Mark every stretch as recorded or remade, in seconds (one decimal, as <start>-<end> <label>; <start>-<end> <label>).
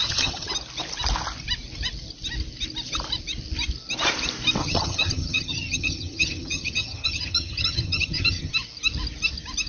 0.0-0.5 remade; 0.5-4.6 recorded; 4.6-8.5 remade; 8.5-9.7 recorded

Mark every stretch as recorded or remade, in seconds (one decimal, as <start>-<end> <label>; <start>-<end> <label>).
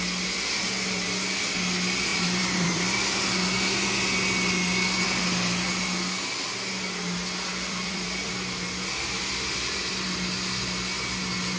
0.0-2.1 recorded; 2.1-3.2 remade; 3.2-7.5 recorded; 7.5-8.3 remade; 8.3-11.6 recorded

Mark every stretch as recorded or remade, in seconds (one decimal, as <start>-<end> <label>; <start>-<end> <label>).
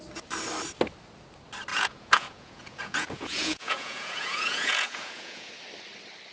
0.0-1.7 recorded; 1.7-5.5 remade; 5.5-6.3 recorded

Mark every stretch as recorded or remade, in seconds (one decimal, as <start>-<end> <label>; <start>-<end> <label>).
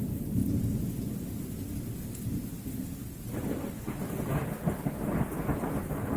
0.0-6.2 recorded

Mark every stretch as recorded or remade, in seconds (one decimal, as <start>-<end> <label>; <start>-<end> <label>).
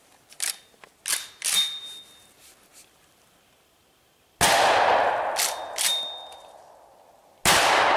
0.0-8.0 recorded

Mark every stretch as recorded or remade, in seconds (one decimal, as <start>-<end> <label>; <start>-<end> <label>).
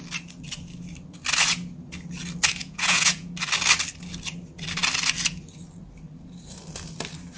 0.0-2.6 recorded; 2.6-3.3 remade; 3.3-7.4 recorded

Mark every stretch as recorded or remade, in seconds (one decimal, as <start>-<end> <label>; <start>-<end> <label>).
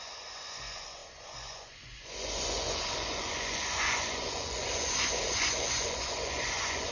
0.0-6.9 remade